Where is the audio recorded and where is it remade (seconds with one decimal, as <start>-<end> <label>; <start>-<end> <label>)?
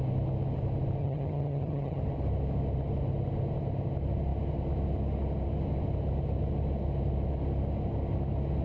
0.0-1.0 recorded; 1.0-2.0 remade; 2.0-8.6 recorded